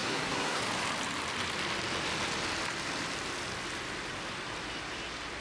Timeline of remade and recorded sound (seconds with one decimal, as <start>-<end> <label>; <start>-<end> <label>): 0.0-0.6 remade; 0.6-5.4 recorded